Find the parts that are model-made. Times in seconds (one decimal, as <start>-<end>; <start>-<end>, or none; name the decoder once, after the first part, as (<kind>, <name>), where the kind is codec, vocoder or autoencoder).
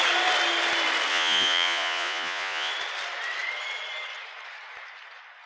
1.1-2.7 (vocoder, Vocos)